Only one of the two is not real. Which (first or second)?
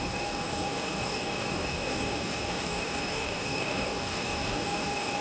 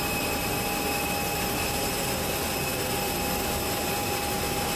first